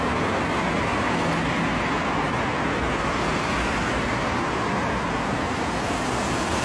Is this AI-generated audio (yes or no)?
no